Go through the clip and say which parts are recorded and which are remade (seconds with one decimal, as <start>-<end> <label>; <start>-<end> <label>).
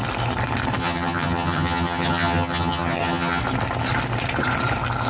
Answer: 0.0-0.8 recorded; 0.8-3.4 remade; 3.4-5.1 recorded